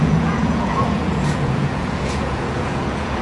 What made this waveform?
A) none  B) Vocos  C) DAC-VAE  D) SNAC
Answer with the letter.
B